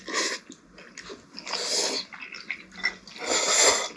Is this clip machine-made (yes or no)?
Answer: no